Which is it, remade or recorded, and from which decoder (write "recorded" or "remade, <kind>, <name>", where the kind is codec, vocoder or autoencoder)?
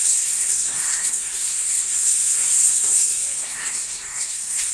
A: remade, codec, SNAC